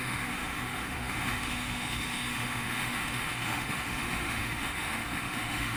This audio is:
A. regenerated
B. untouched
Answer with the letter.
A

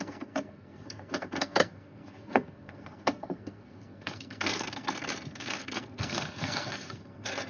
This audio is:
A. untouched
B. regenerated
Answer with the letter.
B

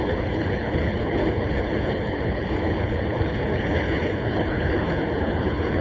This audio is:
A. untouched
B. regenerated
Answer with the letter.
B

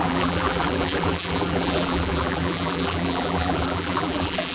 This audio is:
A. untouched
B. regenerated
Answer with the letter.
B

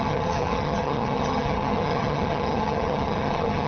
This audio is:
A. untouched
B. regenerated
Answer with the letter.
B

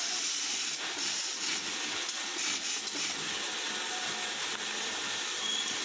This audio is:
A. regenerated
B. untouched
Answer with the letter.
B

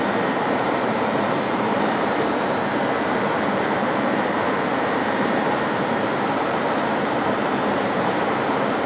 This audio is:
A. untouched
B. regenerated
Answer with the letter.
B